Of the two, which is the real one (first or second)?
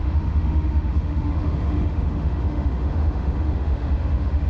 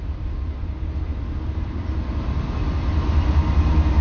second